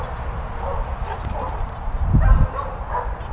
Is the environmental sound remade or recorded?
recorded